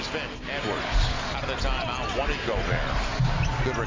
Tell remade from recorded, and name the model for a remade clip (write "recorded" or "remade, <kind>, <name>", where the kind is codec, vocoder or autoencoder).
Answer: recorded